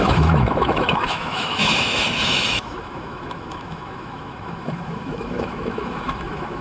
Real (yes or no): no